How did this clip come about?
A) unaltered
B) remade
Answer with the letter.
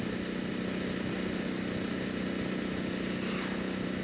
A